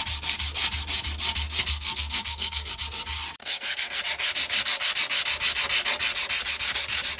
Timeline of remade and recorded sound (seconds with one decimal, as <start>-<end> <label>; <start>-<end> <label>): 0.0-1.6 recorded; 1.6-2.7 remade; 2.7-3.4 recorded; 3.4-4.0 remade; 4.0-7.2 recorded